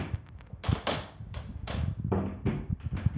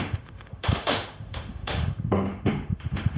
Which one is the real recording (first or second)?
first